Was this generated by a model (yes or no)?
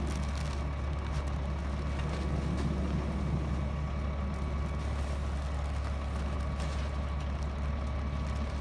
no